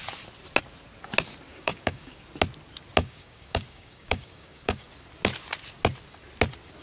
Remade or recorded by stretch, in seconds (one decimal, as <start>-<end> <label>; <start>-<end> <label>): 0.0-1.5 recorded; 1.5-2.2 remade; 2.2-3.0 recorded; 3.0-4.9 remade; 4.9-6.8 recorded